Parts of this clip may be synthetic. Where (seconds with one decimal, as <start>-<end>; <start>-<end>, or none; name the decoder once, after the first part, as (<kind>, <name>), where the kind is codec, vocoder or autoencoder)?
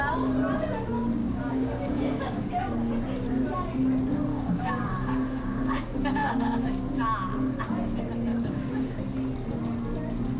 1.2-2.5 (codec, DAC); 4.3-7.0; 8.3-9.0